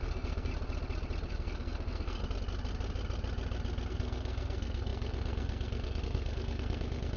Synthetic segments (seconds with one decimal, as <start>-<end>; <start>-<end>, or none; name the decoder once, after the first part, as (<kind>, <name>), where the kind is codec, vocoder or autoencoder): 0.0-0.5 (codec, SNAC); 1.3-2.2; 3.9-7.2